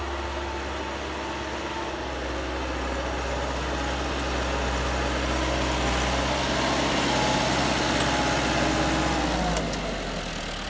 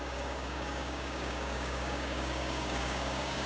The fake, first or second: second